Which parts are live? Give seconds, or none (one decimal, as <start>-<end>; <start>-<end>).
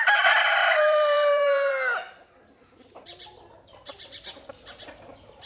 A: 0.0-0.6; 1.7-5.5